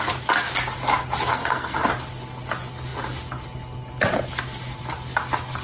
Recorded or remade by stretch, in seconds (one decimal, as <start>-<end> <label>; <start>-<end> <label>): 0.0-1.3 recorded; 1.3-1.9 remade; 1.9-5.6 recorded